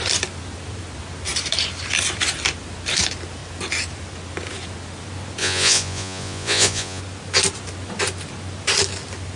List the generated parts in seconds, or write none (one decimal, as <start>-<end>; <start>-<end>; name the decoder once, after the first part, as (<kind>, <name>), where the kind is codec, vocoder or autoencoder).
5.4-7.0 (vocoder, Vocos)